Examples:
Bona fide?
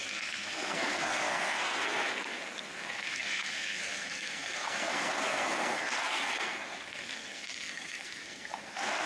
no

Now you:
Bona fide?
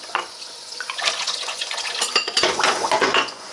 no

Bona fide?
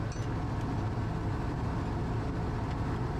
yes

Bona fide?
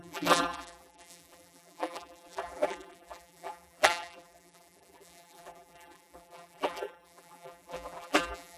no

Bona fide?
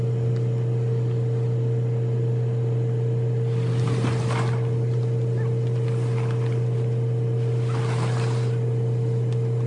yes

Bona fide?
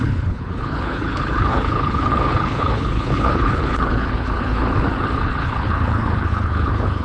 no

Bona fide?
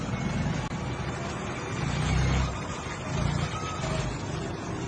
yes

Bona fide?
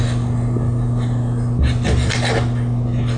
yes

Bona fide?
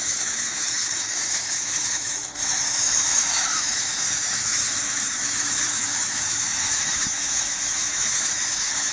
no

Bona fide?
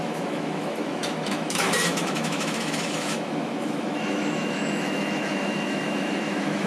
no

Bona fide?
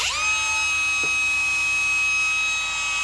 yes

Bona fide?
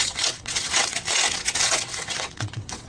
no